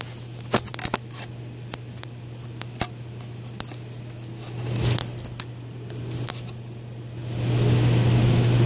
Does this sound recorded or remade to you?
recorded